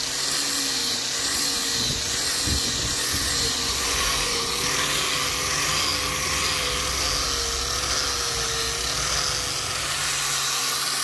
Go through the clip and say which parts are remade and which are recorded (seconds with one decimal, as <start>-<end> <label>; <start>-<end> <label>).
0.0-0.8 recorded; 0.8-4.5 remade; 4.5-11.0 recorded